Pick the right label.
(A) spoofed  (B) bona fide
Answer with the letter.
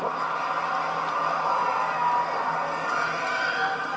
B